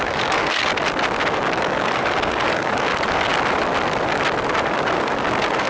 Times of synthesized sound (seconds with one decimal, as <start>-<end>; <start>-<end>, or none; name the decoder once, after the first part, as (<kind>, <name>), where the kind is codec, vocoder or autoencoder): 0.0-0.7 (codec, DAC); 1.3-3.3; 4.7-5.7